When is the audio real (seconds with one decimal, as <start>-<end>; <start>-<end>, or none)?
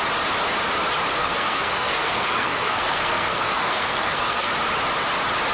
0.0-1.2; 4.5-5.5